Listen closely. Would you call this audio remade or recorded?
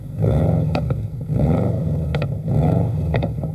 remade